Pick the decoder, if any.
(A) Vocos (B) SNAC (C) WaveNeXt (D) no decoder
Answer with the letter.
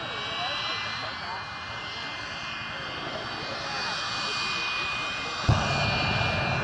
D